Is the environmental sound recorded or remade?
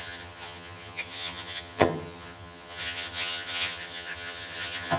remade